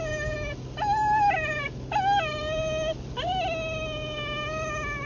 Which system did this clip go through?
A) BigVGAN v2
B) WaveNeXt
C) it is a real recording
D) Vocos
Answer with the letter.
C